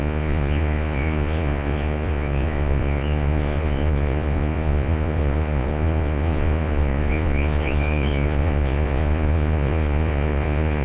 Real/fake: fake